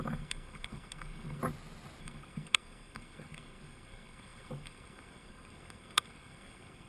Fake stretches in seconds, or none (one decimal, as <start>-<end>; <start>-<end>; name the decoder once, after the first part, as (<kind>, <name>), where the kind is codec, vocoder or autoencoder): 0.0-1.4 (codec, SNAC); 2.0-6.9